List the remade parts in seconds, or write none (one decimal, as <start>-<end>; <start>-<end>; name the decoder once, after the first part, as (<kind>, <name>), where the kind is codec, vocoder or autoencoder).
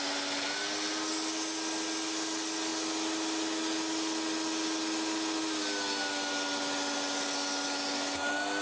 none